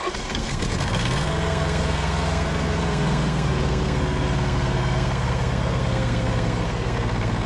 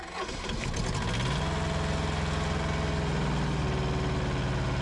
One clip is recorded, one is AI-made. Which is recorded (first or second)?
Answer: second